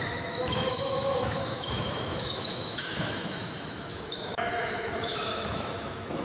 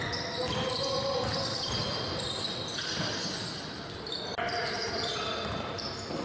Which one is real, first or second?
second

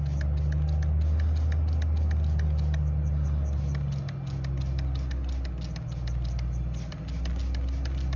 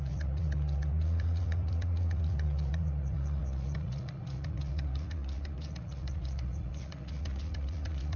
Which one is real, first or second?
first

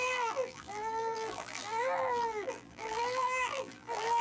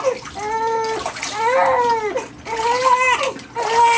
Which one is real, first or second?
second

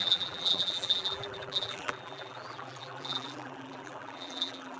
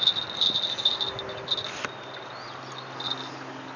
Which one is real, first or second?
second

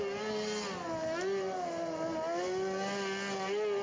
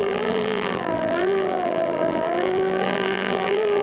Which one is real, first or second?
first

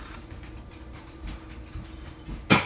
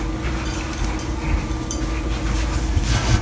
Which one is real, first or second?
second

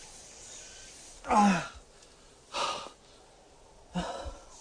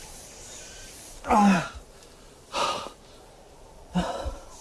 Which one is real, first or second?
first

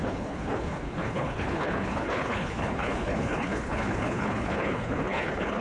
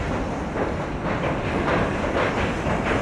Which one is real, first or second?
second